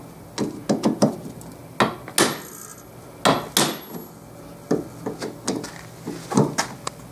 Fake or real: real